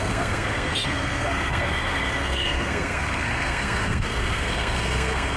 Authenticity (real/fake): fake